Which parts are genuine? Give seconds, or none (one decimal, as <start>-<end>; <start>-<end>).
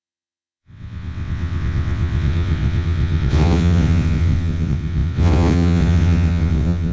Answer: none